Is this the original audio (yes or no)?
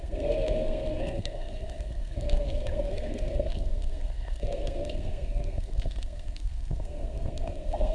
no